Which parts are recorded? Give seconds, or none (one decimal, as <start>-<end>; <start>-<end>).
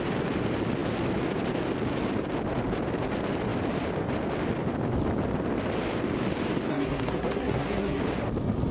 0.0-6.7; 8.0-8.7